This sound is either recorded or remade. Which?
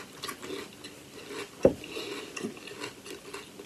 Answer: recorded